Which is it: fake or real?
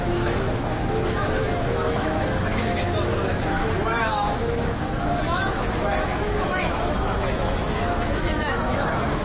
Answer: fake